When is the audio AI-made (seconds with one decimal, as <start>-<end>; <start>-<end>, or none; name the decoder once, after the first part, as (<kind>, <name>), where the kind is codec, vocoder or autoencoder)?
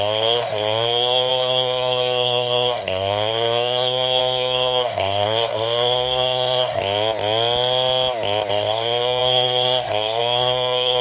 0.0-6.8 (codec, SNAC); 8.5-11.0